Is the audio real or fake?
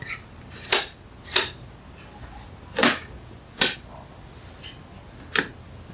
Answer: real